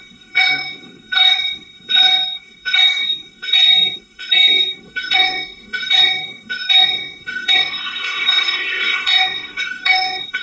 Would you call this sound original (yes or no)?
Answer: no